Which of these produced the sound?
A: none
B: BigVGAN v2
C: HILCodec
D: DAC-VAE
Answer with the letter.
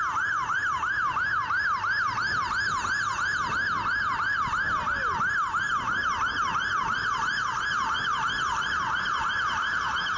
A